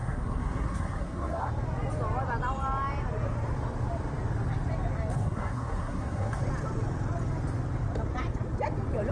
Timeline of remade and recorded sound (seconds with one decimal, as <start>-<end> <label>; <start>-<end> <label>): 0.0-1.5 remade; 1.5-5.1 recorded; 5.1-6.4 remade; 6.4-9.1 recorded